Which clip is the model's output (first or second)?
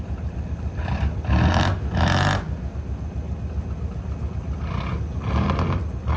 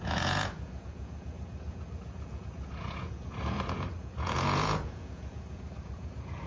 second